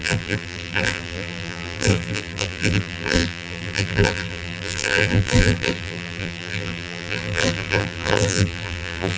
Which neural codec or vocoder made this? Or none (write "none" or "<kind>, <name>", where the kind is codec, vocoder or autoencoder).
vocoder, BigVGAN v2